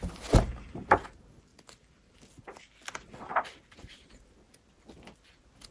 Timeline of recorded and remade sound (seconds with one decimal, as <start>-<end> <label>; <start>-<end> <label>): 0.0-5.7 recorded